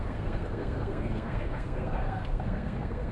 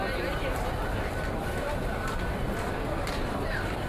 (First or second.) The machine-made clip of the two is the first